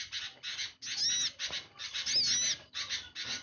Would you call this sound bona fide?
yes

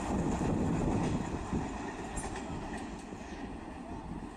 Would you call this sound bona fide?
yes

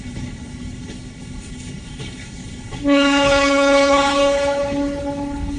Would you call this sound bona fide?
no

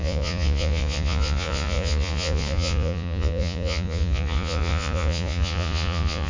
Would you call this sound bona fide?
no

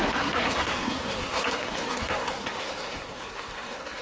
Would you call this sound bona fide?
no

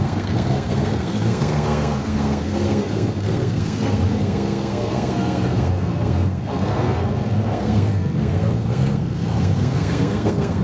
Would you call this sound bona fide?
no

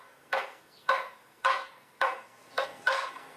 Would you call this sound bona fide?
no